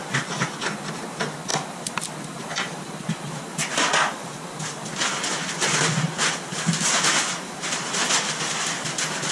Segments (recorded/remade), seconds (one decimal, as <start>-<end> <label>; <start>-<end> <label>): 0.0-9.3 recorded